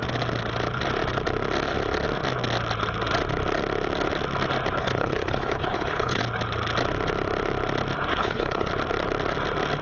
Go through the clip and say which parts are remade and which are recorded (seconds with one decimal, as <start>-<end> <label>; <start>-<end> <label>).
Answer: 0.0-4.8 recorded; 4.8-6.2 remade; 6.2-8.1 recorded; 8.1-8.7 remade; 8.7-9.8 recorded